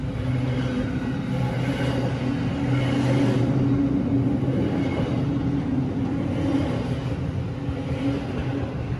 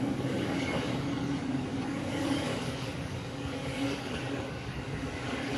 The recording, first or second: first